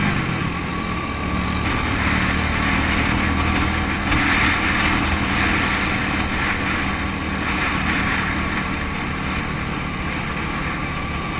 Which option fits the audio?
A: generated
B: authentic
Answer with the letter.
B